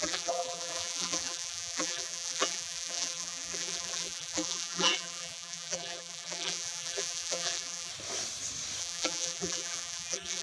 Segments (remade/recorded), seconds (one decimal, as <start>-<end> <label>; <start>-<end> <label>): 0.0-7.9 remade; 7.9-8.8 recorded; 8.8-10.4 remade